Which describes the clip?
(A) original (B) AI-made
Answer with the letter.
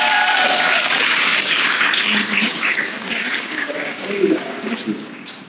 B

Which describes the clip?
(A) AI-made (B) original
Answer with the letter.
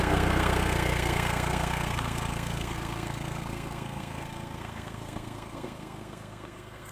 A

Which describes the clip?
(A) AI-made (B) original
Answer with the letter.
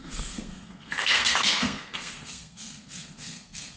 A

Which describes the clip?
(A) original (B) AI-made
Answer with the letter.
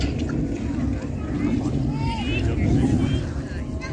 A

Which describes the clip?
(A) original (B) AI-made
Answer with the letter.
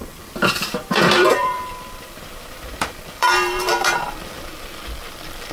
B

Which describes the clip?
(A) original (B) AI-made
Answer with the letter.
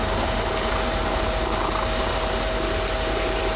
A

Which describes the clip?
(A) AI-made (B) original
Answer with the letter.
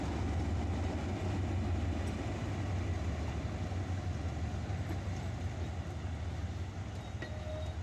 B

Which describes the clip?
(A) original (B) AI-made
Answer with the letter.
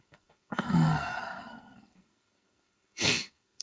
B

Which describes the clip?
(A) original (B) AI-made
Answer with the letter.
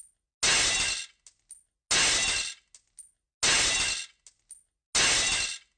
A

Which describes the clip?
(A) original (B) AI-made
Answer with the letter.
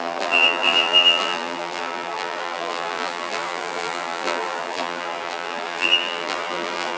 B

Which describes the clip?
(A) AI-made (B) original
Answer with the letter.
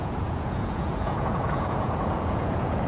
A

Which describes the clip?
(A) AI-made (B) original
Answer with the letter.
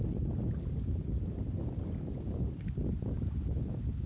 B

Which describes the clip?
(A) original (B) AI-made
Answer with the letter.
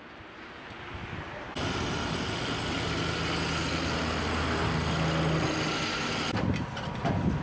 A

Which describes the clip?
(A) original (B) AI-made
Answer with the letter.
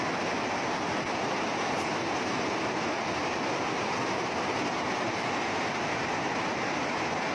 A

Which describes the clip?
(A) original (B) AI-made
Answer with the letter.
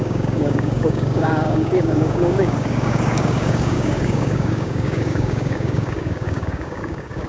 B